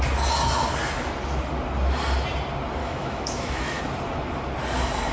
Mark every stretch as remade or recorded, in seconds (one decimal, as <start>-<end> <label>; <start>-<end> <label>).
0.0-2.8 recorded; 2.8-3.8 remade; 3.8-5.1 recorded